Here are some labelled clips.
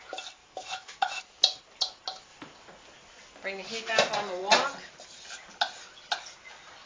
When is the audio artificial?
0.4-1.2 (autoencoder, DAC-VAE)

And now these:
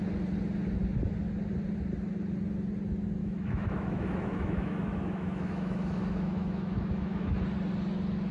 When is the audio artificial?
3.2-7.4 (autoencoder, DAC-VAE)

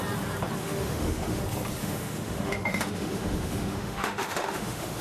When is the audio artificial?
0.6-1.4 (autoencoder, DAC-VAE); 1.8-5.0

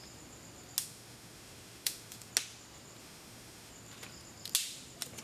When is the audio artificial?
0.8-2.3 (autoencoder, DAC-VAE); 3.0-3.7

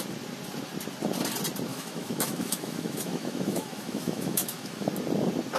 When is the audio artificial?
1.7-4.9 (autoencoder, DAC-VAE)

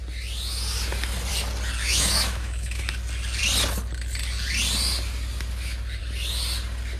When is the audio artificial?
1.8-2.8 (autoencoder, DAC-VAE)

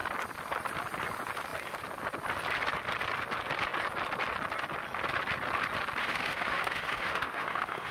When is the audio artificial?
6.0-7.9 (autoencoder, DAC-VAE)

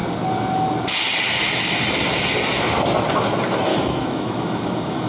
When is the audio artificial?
3.7-5.1 (autoencoder, DAC-VAE)